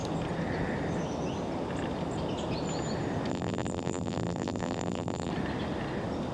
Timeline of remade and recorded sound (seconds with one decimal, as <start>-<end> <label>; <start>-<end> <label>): 0.0-3.3 recorded; 3.3-5.3 remade; 5.3-6.3 recorded